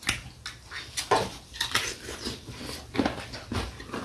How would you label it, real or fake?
real